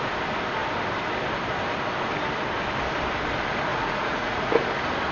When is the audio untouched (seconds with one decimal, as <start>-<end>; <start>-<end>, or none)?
0.0-3.7; 4.5-5.1